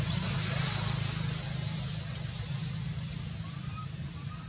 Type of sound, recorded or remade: recorded